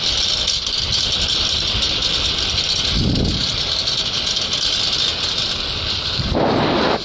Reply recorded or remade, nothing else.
recorded